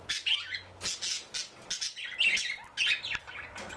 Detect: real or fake real